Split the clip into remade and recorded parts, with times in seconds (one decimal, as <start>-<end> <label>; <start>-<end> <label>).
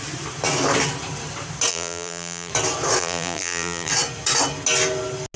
0.0-1.7 recorded; 1.7-2.5 remade; 2.5-3.0 recorded; 3.0-3.9 remade; 3.9-5.4 recorded